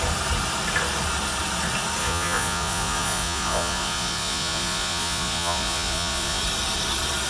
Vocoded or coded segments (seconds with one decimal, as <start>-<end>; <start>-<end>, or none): 2.0-6.4